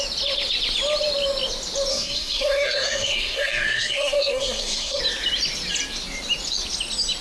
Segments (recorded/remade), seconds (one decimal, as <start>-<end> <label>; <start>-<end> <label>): 0.0-1.9 recorded; 1.9-5.0 remade; 5.0-7.2 recorded